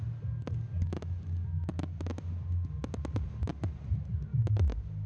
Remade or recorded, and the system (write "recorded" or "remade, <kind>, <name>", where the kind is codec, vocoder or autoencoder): recorded